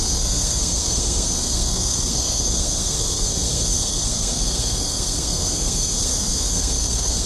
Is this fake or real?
fake